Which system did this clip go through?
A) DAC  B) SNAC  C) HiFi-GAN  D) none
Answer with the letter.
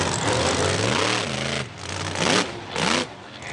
D